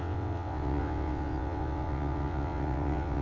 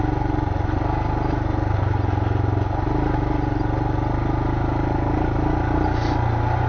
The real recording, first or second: second